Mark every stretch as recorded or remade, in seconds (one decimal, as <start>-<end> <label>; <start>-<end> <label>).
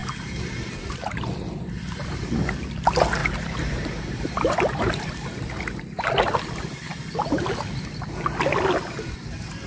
0.0-3.2 recorded; 3.2-5.1 remade; 5.1-9.7 recorded